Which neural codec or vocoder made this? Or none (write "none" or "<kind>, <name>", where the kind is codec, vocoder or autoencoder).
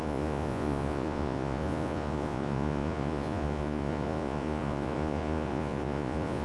vocoder, Vocos